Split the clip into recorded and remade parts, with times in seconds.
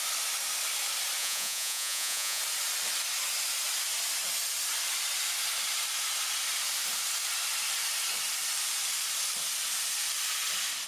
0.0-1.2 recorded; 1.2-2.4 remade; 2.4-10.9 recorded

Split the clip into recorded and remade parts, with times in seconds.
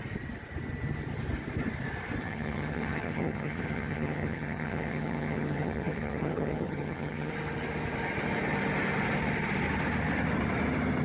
0.0-2.2 recorded; 2.2-7.3 remade; 7.3-11.0 recorded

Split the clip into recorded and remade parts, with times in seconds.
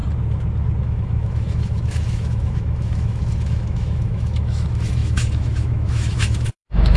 0.0-0.8 recorded; 0.8-7.0 remade